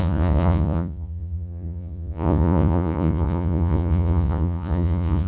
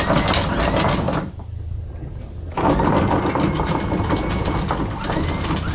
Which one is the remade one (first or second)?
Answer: first